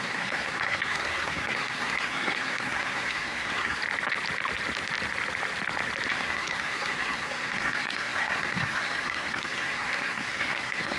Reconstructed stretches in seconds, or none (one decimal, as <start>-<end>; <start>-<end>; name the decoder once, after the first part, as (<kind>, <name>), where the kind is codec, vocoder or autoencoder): 0.0-3.8 (codec, SNAC); 6.1-11.0